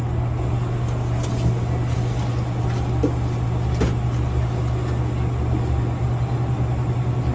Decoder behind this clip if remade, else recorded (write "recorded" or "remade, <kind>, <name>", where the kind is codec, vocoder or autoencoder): recorded